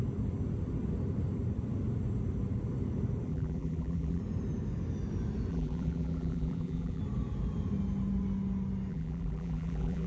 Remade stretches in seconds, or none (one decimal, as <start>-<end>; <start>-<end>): 3.3-4.2; 5.5-7.0; 8.9-10.1